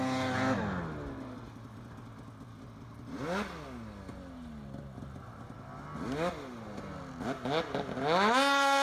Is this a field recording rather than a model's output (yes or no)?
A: yes